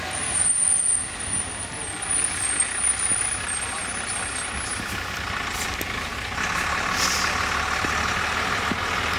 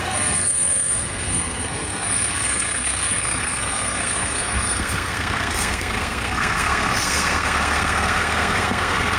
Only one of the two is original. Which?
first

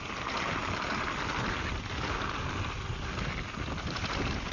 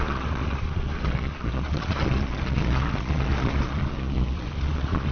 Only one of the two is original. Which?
first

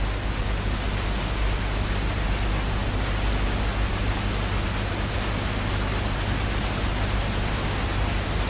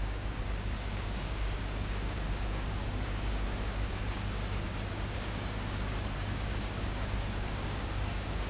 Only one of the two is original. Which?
first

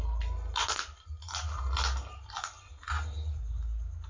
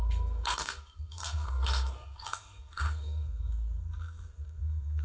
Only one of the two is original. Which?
first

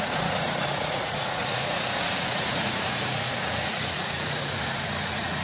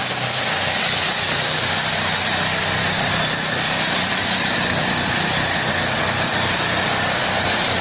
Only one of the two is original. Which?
second